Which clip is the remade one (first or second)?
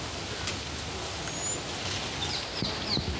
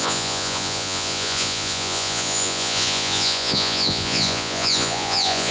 second